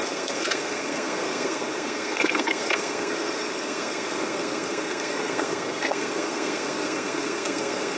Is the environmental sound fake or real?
fake